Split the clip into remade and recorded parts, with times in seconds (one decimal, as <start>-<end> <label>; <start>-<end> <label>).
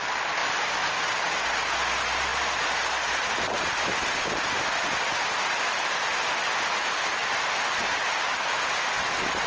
0.0-9.5 recorded